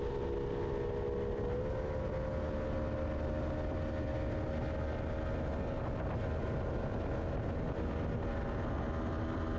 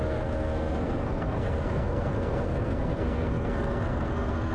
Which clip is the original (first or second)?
first